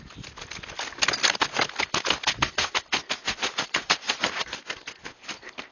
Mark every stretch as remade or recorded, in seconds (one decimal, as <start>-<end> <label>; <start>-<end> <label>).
0.0-3.2 recorded; 3.2-4.6 remade; 4.6-5.7 recorded